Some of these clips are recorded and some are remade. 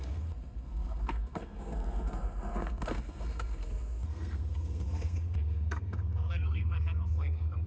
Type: remade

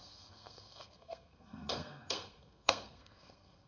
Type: remade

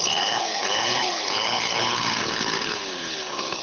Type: remade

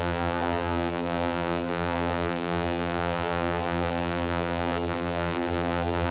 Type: remade